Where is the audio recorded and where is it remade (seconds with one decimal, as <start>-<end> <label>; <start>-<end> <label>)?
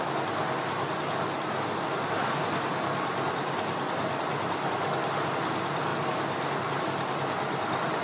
0.0-8.0 recorded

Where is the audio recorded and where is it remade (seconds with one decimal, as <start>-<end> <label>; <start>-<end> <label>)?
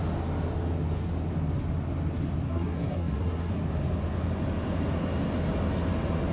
0.0-2.5 recorded; 2.5-3.5 remade; 3.5-6.3 recorded